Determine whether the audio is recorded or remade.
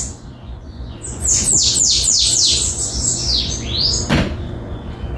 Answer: remade